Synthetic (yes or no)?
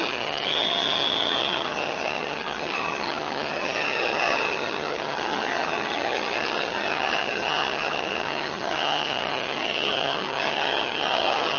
yes